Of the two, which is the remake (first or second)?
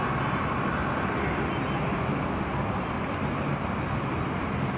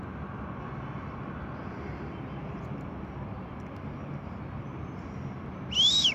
second